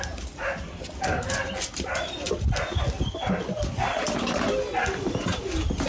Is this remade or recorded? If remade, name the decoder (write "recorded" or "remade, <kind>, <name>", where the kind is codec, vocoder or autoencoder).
recorded